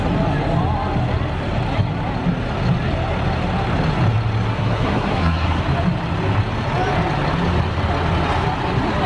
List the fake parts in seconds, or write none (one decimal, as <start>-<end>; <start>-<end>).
4.5-5.6